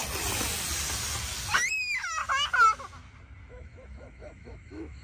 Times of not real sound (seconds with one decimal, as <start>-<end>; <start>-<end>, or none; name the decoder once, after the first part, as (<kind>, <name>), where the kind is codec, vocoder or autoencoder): 1.7-2.2 (autoencoder, DAC-VAE); 3.5-5.0